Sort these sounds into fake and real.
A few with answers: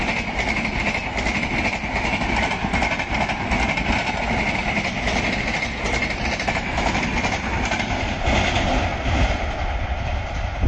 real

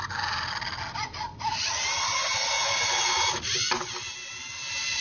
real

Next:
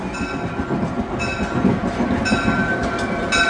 real